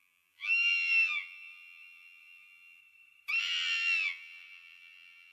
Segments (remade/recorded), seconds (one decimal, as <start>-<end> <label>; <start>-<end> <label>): 0.0-2.8 remade; 2.8-3.4 recorded; 3.4-5.3 remade